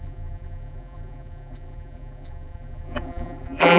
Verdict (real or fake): fake